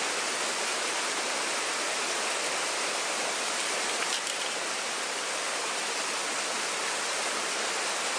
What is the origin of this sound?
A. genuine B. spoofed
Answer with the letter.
A